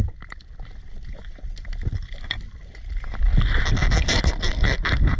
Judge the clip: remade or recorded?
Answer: remade